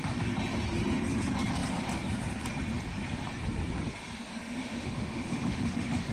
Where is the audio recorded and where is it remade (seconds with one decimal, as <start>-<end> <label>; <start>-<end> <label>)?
0.0-4.3 recorded; 4.3-6.1 remade